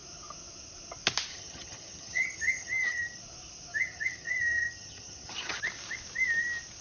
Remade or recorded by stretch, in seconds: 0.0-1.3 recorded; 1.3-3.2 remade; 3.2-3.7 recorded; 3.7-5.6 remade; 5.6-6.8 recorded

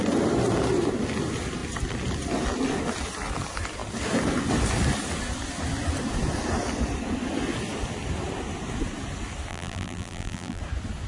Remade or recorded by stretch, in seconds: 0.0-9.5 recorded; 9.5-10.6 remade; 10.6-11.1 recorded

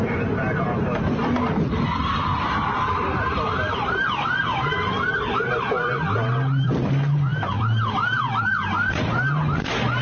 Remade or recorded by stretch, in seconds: 0.0-1.2 recorded; 1.2-4.4 remade; 4.4-7.3 recorded; 7.3-7.9 remade; 7.9-10.0 recorded

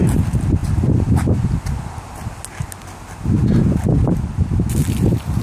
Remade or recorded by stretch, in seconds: 0.0-0.6 remade; 0.6-3.8 recorded; 3.8-5.4 remade

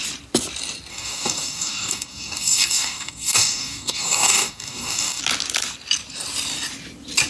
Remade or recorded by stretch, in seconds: 0.0-0.9 recorded; 0.9-5.2 remade; 5.2-7.3 recorded